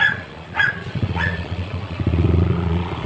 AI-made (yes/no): yes